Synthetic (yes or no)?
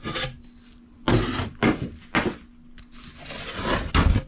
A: no